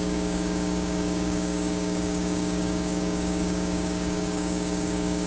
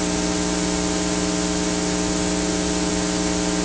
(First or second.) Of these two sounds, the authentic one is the second